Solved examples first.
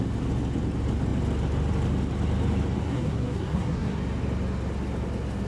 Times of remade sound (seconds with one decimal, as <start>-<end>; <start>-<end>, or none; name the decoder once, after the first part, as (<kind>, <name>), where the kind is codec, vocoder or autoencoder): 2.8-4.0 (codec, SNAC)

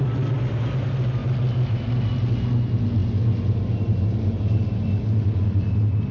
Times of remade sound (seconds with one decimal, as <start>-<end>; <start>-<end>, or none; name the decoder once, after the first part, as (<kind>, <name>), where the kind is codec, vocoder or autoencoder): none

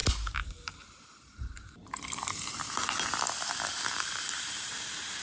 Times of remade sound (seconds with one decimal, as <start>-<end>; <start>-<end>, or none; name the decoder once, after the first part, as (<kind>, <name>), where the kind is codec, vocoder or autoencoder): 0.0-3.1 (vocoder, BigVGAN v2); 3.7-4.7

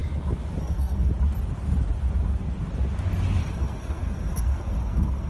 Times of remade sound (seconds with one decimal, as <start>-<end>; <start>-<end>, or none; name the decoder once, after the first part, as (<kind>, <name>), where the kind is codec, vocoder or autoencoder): 0.6-1.1 (codec, SNAC); 3.4-5.3

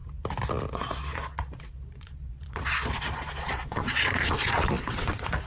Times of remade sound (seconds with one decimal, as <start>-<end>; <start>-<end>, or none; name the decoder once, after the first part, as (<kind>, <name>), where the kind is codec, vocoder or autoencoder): 0.7-5.5 (vocoder, Vocos)

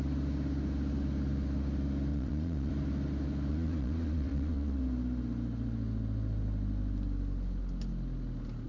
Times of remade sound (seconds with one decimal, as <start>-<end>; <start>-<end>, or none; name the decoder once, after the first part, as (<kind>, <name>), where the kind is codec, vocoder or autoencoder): 2.1-2.7 (vocoder, Vocos); 3.5-4.8

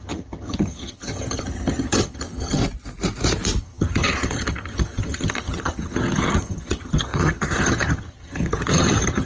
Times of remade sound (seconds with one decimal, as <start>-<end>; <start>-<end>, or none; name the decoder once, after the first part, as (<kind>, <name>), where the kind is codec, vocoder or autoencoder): 0.0-2.6 (vocoder, HiFi-GAN); 3.6-9.3

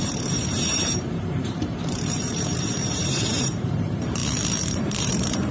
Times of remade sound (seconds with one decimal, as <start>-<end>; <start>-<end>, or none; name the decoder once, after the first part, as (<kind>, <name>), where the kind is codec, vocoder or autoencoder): 0.0-4.2 (vocoder, BigVGAN v2); 4.8-5.5